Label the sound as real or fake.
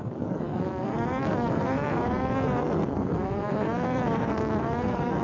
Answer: fake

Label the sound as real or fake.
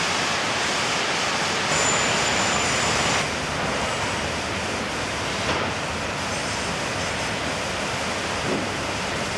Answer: real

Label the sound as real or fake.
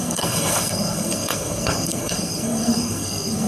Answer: fake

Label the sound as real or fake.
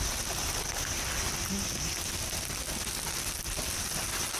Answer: real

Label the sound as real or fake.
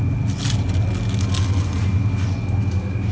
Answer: real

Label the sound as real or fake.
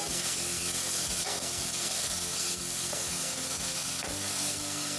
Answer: fake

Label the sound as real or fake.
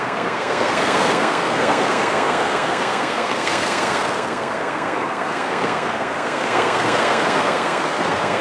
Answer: fake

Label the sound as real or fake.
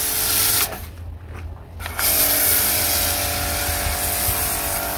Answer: real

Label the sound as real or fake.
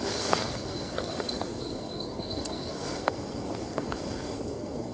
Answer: fake